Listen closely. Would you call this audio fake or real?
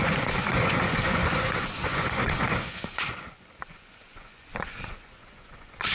fake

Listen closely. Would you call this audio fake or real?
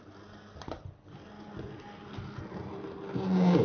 real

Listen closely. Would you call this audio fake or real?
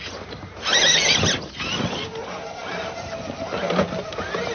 real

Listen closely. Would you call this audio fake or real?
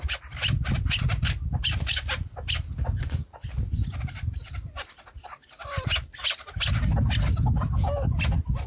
real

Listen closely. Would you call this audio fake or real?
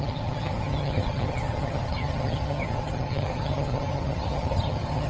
fake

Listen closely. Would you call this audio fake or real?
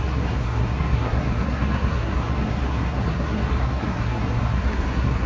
fake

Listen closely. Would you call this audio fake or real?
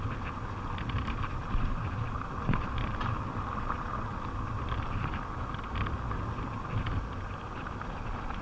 real